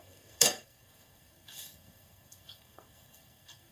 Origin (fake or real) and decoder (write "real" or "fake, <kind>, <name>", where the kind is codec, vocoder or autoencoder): fake, codec, SNAC